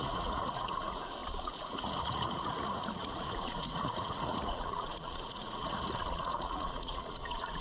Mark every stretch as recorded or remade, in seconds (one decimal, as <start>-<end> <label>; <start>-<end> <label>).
0.0-7.6 remade